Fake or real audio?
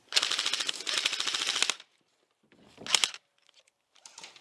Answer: real